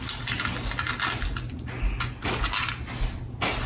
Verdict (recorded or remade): recorded